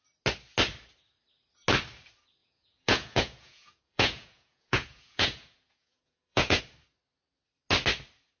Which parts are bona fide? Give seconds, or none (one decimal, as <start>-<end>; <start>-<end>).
0.0-2.4; 6.6-8.4